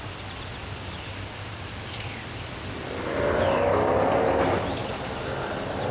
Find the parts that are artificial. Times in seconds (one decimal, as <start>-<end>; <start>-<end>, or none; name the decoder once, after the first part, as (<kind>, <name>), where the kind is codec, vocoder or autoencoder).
0.6-3.9 (vocoder, BigVGAN v2)